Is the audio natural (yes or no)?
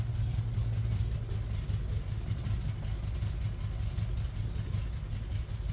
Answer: yes